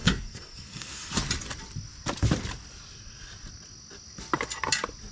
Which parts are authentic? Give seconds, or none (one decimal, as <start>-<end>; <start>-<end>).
1.1-5.1